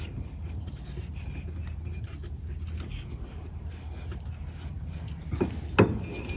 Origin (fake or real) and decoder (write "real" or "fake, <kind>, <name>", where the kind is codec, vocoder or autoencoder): real